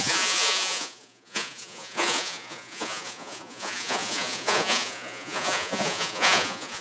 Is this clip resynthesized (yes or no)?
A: yes